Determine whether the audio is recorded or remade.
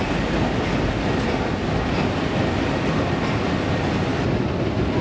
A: recorded